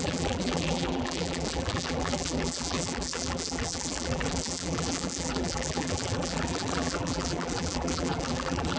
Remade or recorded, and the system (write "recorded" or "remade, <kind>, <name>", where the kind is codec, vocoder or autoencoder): remade, vocoder, BigVGAN v2